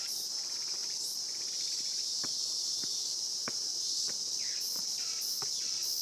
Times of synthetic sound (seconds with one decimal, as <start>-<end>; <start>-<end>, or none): 0.8-4.2